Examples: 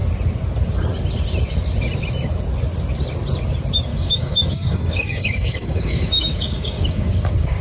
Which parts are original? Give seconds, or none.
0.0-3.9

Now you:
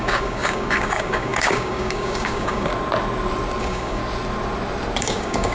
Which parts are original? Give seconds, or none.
2.7-3.6; 4.0-5.0

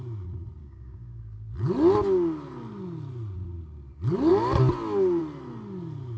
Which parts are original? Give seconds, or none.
0.0-0.6; 1.2-6.2

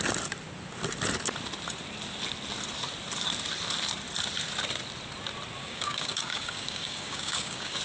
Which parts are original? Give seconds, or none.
0.0-5.6

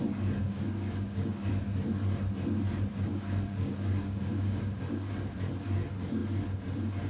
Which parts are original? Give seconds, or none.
0.0-0.4; 1.5-2.9; 5.1-7.1

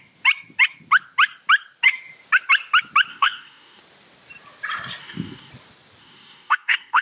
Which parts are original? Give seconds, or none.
0.0-3.1; 3.8-5.0; 5.5-6.0

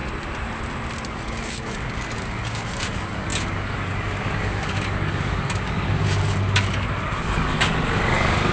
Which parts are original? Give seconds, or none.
0.0-1.1

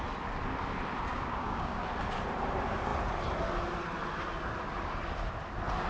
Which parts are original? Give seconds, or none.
0.0-1.1; 1.8-5.9